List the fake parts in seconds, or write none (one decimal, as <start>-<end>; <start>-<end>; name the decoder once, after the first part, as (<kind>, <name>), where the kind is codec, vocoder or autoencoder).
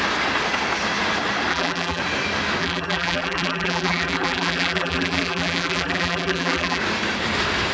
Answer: 1.5-2.0 (vocoder, BigVGAN v2); 2.6-6.8